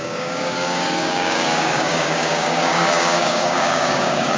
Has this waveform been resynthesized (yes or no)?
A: yes